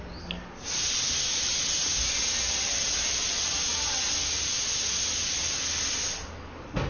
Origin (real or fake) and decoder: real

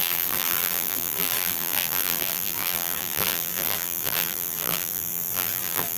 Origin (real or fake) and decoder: fake, vocoder, BigVGAN v2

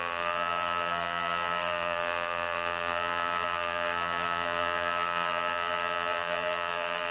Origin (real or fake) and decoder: fake, vocoder, BigVGAN v2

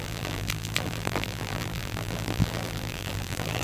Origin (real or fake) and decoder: fake, vocoder, BigVGAN v2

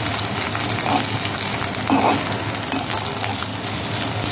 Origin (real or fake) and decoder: real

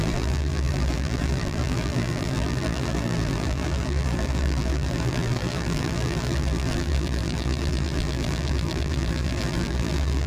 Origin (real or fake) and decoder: fake, vocoder, BigVGAN v2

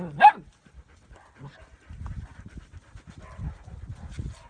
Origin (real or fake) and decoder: real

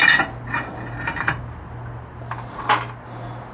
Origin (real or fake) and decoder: real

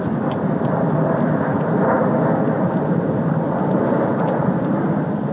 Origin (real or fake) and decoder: fake, vocoder, BigVGAN v2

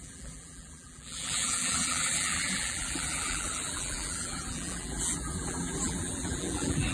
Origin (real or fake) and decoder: fake, vocoder, BigVGAN v2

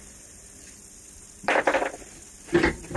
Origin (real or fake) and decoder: fake, vocoder, BigVGAN v2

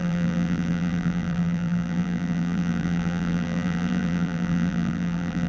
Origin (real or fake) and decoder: fake, vocoder, BigVGAN v2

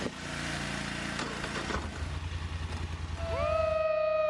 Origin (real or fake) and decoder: real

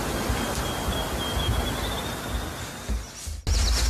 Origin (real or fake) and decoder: real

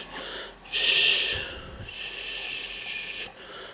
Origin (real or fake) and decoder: real